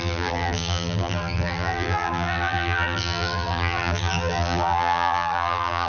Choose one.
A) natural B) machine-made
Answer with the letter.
B